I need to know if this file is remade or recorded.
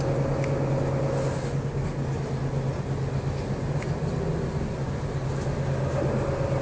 recorded